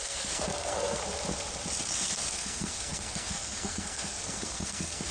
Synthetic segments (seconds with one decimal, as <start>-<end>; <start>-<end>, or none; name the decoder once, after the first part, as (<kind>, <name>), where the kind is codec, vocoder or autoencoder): 0.0-1.0 (codec, SNAC); 1.8-5.1